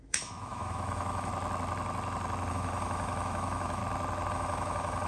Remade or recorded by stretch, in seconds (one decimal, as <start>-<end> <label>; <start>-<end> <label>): 0.0-1.3 remade; 1.3-2.5 recorded; 2.5-3.8 remade; 3.8-4.3 recorded; 4.3-5.1 remade